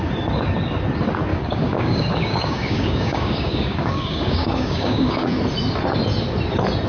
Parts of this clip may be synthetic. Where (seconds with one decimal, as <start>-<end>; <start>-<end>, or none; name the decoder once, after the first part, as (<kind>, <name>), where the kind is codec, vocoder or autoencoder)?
1.3-5.4 (codec, DAC)